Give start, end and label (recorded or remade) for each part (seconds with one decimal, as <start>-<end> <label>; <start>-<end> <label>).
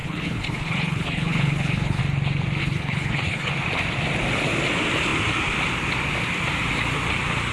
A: 0.0-2.0 remade; 2.0-2.6 recorded; 2.6-3.5 remade; 3.5-7.5 recorded